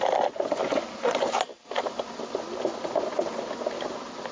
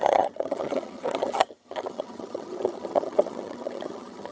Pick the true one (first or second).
first